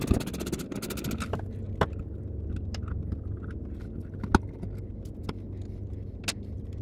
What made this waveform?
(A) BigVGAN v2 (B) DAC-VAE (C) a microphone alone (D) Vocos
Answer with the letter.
C